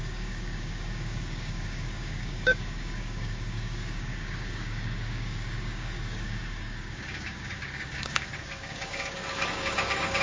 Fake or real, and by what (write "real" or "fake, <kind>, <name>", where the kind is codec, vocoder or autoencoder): fake, codec, DAC